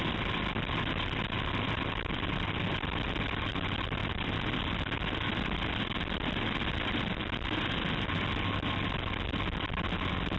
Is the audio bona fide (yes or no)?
yes